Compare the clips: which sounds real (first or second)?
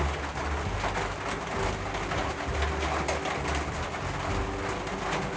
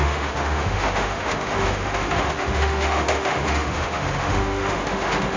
first